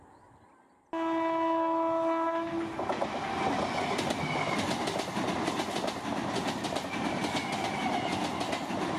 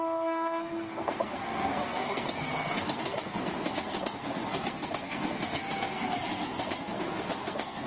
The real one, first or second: first